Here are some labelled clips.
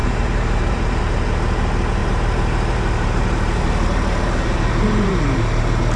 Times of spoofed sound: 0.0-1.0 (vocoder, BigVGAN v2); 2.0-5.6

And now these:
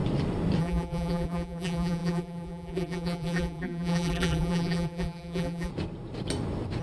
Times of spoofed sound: 0.6-5.7 (vocoder, BigVGAN v2)

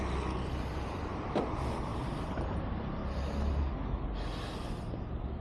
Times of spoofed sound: 1.9-2.7 (vocoder, BigVGAN v2)

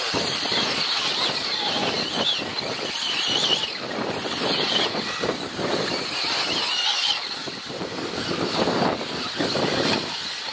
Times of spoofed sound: 2.5-6.7 (vocoder, BigVGAN v2); 7.5-8.3